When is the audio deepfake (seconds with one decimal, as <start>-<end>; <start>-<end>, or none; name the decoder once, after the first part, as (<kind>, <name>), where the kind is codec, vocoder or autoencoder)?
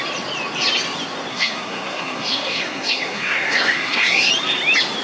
1.3-4.3 (codec, SNAC)